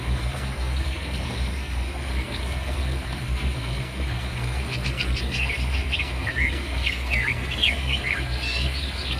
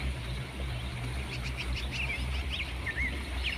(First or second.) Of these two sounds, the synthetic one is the first